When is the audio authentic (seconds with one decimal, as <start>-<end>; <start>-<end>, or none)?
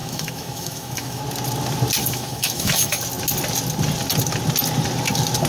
1.2-2.0; 3.0-5.5